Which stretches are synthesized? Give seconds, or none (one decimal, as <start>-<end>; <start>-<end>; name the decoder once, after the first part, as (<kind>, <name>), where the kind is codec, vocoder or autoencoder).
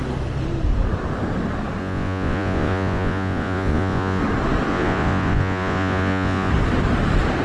1.8-4.2 (vocoder, Vocos); 4.7-6.5